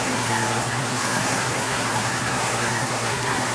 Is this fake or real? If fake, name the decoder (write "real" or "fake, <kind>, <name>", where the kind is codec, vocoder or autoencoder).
fake, codec, SNAC